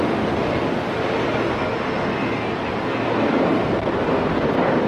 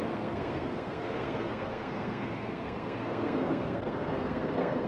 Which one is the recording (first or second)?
first